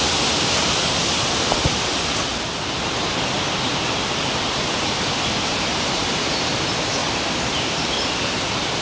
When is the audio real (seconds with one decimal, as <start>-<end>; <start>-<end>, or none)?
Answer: 1.0-4.7; 7.0-8.2